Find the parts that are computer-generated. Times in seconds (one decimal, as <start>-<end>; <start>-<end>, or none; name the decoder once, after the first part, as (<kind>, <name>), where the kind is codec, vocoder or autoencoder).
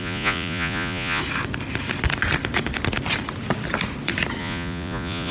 0.0-1.2 (vocoder, Vocos); 4.4-5.3